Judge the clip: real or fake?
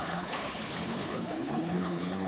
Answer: fake